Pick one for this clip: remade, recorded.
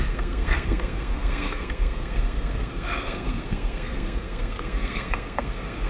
remade